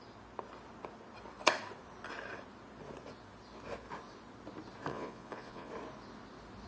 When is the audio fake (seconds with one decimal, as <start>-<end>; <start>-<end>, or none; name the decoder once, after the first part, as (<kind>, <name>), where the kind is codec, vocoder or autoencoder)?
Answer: 4.9-5.7 (vocoder, Vocos)